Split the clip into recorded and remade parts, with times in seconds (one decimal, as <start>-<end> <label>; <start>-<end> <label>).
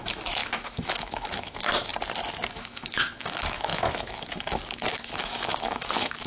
0.0-1.9 remade; 1.9-2.5 recorded; 2.5-6.3 remade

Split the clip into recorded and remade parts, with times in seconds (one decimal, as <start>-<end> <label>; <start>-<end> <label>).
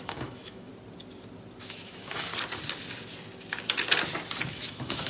0.0-0.7 remade; 0.7-1.6 recorded; 1.6-2.3 remade; 2.3-4.5 recorded; 4.5-5.1 remade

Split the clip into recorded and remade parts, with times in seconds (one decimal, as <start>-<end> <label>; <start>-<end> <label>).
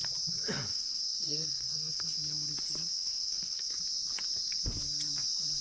0.0-0.7 recorded; 0.7-2.2 remade; 2.2-2.9 recorded; 2.9-3.8 remade; 3.8-5.6 recorded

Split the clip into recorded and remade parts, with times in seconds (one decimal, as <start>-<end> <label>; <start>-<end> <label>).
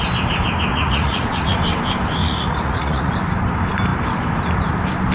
0.0-0.7 recorded; 0.7-1.6 remade; 1.6-2.2 recorded; 2.2-3.1 remade; 3.1-5.1 recorded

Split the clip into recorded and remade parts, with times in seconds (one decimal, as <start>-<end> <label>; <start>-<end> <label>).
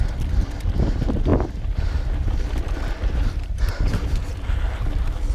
0.0-1.3 remade; 1.3-3.4 recorded; 3.4-5.3 remade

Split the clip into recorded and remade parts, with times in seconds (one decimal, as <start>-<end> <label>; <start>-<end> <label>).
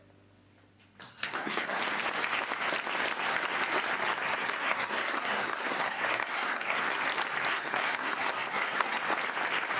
0.0-1.1 recorded; 1.1-1.8 remade; 1.8-4.3 recorded; 4.3-7.0 remade; 7.0-7.5 recorded; 7.5-9.0 remade; 9.0-9.8 recorded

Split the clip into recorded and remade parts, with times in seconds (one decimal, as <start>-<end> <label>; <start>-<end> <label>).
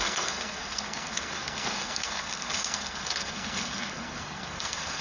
0.0-5.0 remade